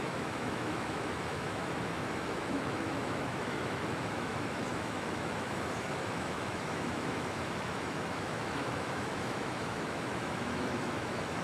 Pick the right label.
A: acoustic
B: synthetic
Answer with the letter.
B